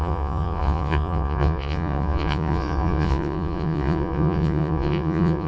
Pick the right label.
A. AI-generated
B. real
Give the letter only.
A